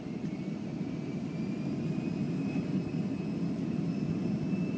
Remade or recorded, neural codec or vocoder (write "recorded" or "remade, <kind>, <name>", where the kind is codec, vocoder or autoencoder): recorded